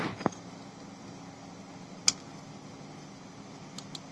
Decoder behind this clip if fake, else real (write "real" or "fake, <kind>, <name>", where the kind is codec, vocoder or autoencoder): real